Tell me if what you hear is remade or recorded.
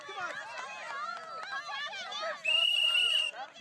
recorded